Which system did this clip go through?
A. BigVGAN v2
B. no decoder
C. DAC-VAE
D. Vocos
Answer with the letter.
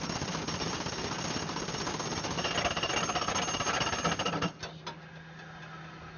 B